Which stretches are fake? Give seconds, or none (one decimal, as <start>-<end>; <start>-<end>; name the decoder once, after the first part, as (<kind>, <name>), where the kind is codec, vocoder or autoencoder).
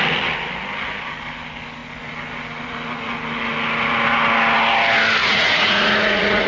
5.2-6.5 (vocoder, Vocos)